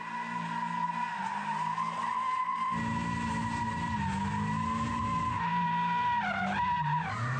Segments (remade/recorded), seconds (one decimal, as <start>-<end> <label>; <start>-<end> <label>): 0.0-7.4 recorded